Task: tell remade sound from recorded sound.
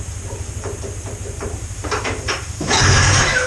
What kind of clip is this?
remade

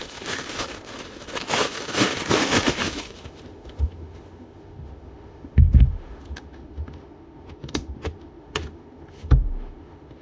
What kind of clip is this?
remade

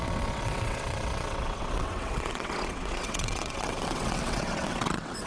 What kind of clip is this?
remade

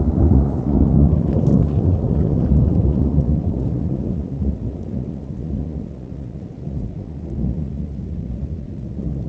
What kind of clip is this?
remade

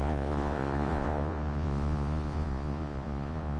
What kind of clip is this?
remade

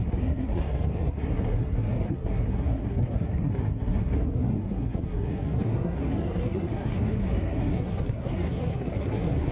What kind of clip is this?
remade